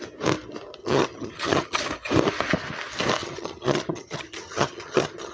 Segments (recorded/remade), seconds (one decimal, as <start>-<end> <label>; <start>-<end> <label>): 0.0-0.8 recorded; 0.8-1.8 remade; 1.8-3.2 recorded; 3.2-5.3 remade

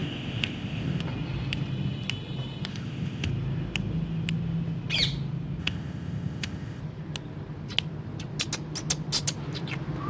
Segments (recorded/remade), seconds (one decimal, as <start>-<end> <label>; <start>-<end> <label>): 0.0-1.0 remade; 1.0-2.7 recorded; 2.7-3.3 remade; 3.3-5.6 recorded; 5.6-6.8 remade; 6.8-10.1 recorded